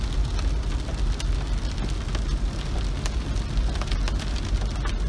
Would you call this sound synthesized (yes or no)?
no